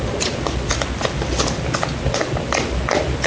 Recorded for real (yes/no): yes